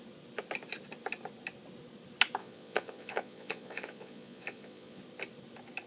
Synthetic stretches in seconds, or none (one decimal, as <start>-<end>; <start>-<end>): 2.4-5.0